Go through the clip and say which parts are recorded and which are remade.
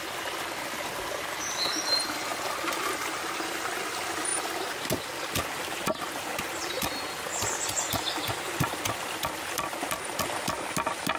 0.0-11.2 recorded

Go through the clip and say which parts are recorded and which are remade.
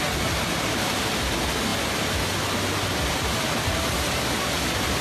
0.0-5.0 recorded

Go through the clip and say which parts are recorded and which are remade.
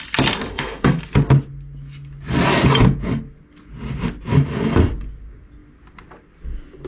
0.0-0.5 recorded; 0.5-1.0 remade; 1.0-6.9 recorded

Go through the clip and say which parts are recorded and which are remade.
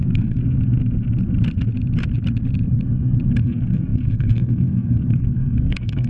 0.0-0.4 remade; 0.4-3.4 recorded; 3.4-6.1 remade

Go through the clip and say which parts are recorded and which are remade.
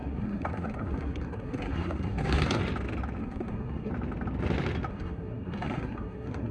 0.0-2.6 remade; 2.6-3.2 recorded; 3.2-3.9 remade; 3.9-4.9 recorded; 4.9-6.5 remade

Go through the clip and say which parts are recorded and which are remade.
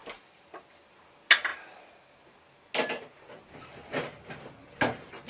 0.0-5.3 recorded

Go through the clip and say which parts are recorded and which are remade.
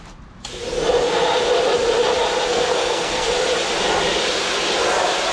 0.0-2.5 recorded; 2.5-3.3 remade; 3.3-5.3 recorded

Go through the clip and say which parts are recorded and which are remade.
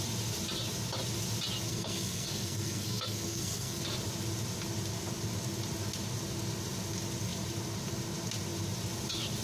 0.0-1.7 recorded; 1.7-3.8 remade; 3.8-9.4 recorded